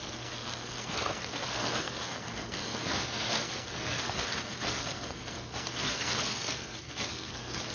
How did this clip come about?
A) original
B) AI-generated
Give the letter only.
B